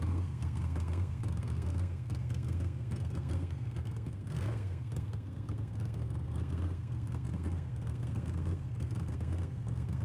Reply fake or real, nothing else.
fake